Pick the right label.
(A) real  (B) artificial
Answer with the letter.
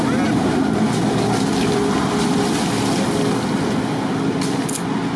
A